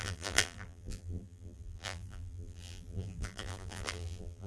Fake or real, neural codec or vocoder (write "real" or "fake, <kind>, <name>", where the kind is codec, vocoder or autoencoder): fake, vocoder, BigVGAN v2